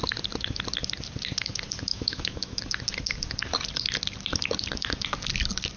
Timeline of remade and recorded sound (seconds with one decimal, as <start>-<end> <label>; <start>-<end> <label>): 0.0-1.9 recorded; 1.9-2.6 remade; 2.6-5.8 recorded